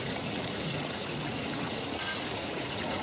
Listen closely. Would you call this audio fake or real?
fake